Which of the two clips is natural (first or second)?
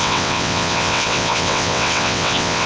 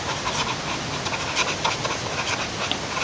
second